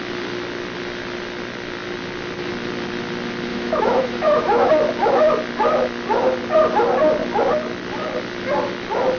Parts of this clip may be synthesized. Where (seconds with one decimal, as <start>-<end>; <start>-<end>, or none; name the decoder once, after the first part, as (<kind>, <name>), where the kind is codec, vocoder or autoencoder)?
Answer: 3.5-4.7 (autoencoder, DAC-VAE)